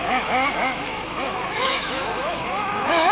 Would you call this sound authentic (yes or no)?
no